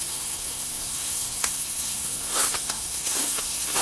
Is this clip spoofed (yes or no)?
yes